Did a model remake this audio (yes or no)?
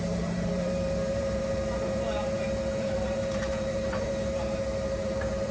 yes